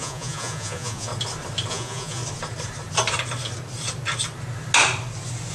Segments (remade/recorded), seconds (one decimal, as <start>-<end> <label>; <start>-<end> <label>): 0.0-1.1 remade; 1.1-1.7 recorded; 1.7-2.2 remade; 2.2-5.5 recorded